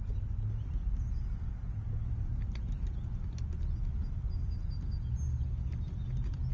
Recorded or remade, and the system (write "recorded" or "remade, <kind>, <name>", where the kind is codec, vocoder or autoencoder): recorded